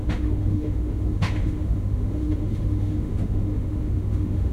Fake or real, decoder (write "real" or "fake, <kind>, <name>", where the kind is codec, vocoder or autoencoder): fake, autoencoder, DAC-VAE